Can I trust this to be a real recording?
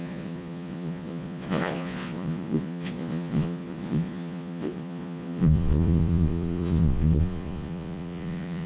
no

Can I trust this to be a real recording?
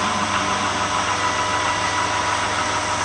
yes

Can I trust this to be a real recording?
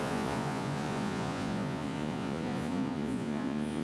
no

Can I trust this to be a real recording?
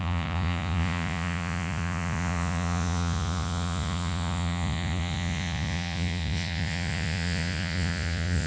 no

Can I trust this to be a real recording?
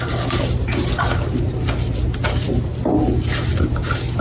yes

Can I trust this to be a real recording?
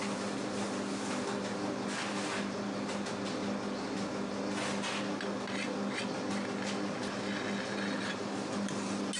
yes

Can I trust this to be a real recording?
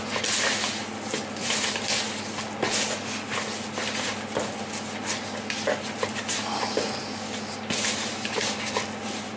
yes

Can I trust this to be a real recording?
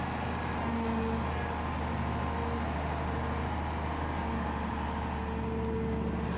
yes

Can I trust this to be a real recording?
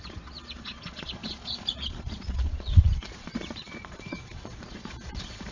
no